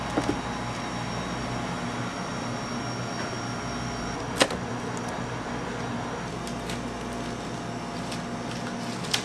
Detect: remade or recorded recorded